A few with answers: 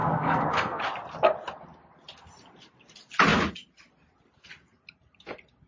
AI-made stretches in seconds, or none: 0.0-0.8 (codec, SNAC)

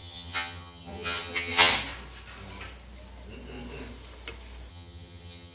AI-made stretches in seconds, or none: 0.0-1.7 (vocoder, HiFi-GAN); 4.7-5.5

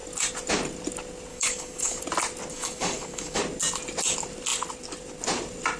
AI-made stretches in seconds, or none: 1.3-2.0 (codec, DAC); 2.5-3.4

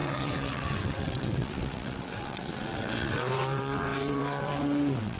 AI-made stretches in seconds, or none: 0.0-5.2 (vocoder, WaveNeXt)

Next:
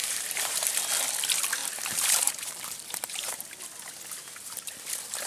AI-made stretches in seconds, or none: 0.0-0.8 (vocoder, BigVGAN v2); 1.6-3.4

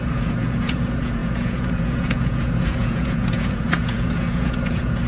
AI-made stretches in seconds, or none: 0.0-5.1 (vocoder, Vocos)

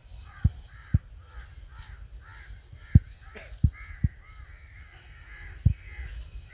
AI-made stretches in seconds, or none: 0.0-1.0 (vocoder, BigVGAN v2)